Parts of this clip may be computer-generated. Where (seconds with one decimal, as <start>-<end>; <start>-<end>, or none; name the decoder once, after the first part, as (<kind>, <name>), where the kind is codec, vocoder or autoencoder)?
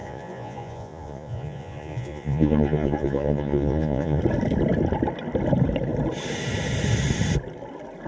0.0-4.2 (vocoder, Vocos)